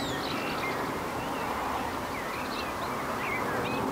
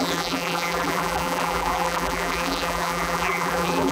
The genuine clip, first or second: first